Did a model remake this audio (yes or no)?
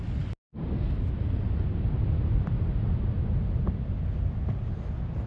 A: no